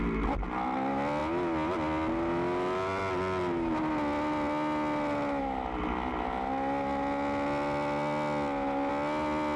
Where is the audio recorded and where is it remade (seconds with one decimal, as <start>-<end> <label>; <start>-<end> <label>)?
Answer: 0.0-9.6 recorded